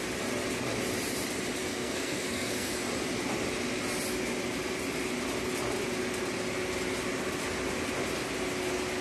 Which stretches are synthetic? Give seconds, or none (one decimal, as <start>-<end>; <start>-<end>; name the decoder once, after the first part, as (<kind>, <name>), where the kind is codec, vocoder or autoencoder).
1.6-2.8 (codec, SNAC)